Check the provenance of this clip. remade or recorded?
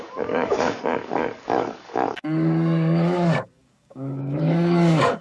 remade